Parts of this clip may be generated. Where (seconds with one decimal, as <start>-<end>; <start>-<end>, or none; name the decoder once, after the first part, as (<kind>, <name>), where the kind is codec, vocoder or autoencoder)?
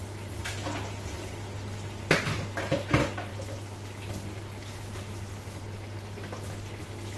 none